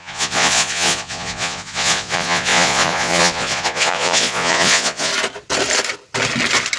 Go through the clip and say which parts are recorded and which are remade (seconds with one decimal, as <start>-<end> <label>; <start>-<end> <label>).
0.0-5.1 remade; 5.1-6.8 recorded